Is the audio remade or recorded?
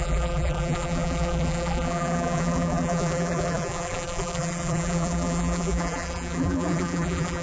remade